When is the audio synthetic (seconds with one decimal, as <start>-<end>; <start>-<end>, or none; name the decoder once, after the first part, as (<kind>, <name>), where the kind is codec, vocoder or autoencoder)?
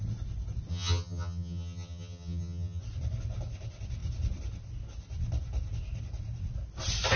0.7-2.8 (vocoder, HiFi-GAN)